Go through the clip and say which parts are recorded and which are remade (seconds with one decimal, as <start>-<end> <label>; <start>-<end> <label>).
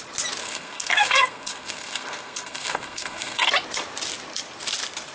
0.0-0.4 recorded; 0.4-3.5 remade; 3.5-5.1 recorded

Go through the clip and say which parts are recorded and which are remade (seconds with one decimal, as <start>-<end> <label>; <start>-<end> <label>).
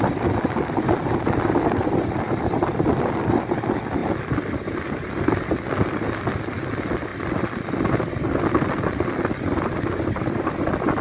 0.0-11.0 recorded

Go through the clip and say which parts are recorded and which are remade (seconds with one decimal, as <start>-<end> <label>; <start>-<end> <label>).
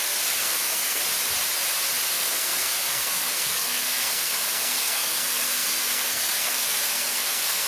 0.0-1.0 remade; 1.0-2.1 recorded; 2.1-7.7 remade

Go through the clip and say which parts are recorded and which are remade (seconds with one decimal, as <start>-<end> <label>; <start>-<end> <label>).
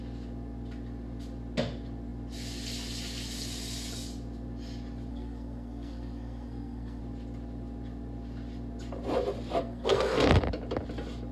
0.0-5.1 recorded; 5.1-7.0 remade; 7.0-9.6 recorded; 9.6-10.4 remade; 10.4-11.3 recorded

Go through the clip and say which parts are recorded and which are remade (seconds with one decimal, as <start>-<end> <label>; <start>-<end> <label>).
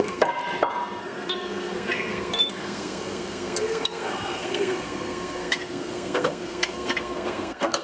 0.0-0.4 remade; 0.4-1.0 recorded; 1.0-7.8 remade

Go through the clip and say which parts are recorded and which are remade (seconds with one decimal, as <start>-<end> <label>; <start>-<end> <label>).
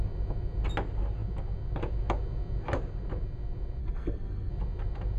0.0-3.8 recorded; 3.8-4.5 remade; 4.5-5.2 recorded